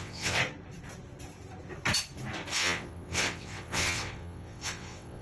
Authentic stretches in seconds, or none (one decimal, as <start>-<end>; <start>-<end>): 0.4-2.5